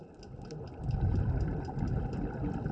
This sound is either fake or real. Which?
real